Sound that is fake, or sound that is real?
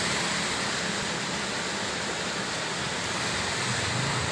real